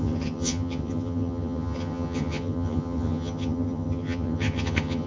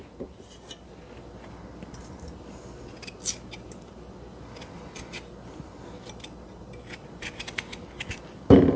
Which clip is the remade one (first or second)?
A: first